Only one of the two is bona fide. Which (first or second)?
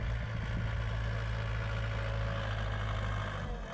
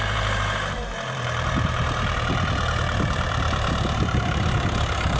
first